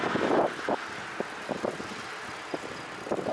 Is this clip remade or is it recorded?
recorded